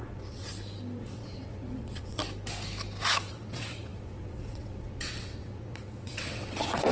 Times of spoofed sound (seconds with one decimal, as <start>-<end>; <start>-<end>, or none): 0.0-0.5; 1.0-2.2; 3.3-6.9